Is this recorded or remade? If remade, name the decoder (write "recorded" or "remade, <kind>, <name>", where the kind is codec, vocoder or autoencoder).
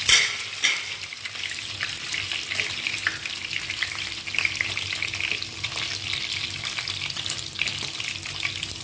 recorded